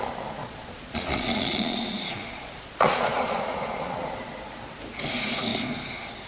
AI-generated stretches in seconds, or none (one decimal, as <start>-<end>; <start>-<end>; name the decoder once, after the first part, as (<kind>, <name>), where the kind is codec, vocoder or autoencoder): 0.4-4.2 (vocoder, Vocos)

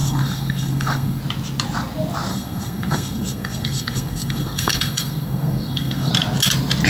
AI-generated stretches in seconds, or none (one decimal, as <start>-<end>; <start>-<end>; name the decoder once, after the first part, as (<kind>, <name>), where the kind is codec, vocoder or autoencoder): 0.0-1.2 (codec, SNAC); 2.3-6.1

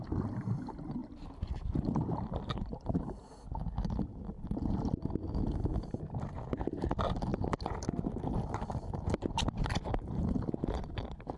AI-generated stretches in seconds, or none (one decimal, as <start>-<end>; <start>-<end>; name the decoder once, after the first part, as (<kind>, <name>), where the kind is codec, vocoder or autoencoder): 1.0-3.0 (vocoder, BigVGAN v2)

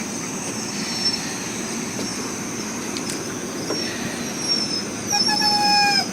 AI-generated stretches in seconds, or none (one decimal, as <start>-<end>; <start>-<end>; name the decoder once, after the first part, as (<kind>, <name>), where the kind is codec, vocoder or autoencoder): 2.1-3.1 (vocoder, BigVGAN v2)

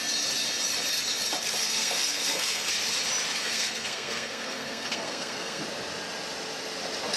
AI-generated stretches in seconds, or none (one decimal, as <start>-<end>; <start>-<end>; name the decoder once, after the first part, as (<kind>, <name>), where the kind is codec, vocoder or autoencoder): 1.6-2.7 (codec, SNAC); 3.4-5.6

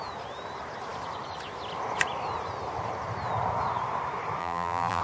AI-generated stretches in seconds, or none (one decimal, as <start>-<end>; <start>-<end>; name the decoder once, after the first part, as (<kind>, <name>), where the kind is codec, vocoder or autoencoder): 4.4-5.0 (vocoder, BigVGAN v2)